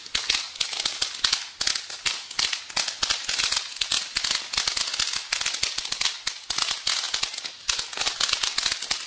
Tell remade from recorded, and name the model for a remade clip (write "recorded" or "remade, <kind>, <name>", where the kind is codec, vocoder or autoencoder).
recorded